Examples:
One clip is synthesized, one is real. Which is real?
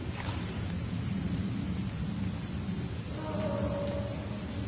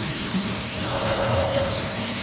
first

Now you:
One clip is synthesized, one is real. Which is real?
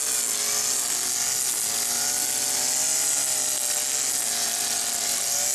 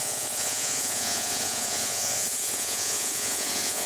first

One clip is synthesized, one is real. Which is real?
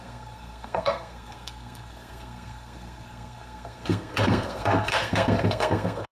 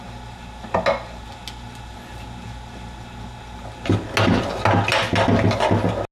second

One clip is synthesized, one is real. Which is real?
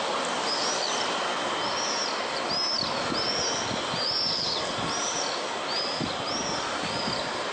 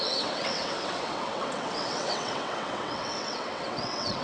first